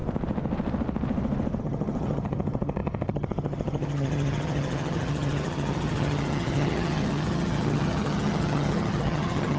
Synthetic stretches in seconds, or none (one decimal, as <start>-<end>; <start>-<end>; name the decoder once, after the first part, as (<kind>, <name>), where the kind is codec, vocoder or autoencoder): 1.6-9.6 (vocoder, HiFi-GAN)